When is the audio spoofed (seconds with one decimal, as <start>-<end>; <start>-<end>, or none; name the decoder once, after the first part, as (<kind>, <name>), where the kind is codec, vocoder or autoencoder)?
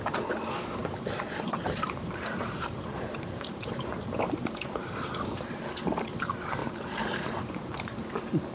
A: 0.8-5.6 (vocoder, BigVGAN v2); 6.6-8.1